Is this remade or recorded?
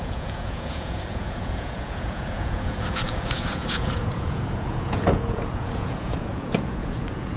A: remade